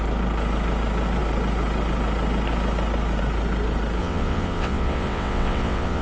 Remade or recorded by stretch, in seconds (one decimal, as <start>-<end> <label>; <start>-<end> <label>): 0.0-4.0 recorded; 4.0-6.0 remade